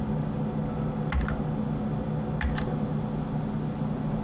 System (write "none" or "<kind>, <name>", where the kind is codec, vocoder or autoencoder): none